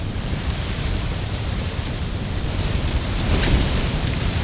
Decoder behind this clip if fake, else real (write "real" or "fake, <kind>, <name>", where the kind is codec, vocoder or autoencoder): fake, vocoder, BigVGAN v2